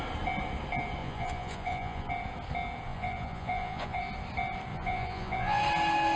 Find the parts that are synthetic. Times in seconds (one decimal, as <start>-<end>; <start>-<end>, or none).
1.0-2.1; 2.9-4.0; 4.7-5.6